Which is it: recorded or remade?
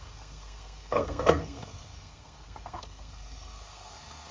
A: remade